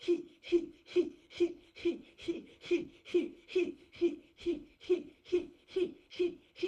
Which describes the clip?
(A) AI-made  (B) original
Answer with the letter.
A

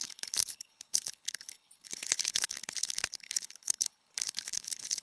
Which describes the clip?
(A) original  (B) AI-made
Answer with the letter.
B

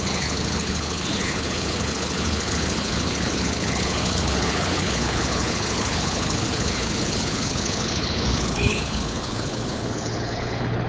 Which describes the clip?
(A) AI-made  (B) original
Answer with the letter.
A